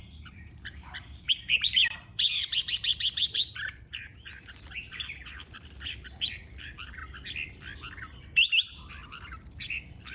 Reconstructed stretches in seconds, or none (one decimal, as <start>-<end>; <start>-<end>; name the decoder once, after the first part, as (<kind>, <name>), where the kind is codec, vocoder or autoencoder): 0.0-7.0 (vocoder, BigVGAN v2); 8.2-10.1